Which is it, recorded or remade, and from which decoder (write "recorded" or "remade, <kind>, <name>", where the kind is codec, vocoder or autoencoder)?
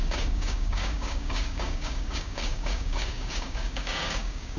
remade, codec, DAC